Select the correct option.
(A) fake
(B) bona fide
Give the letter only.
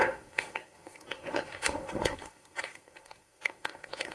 A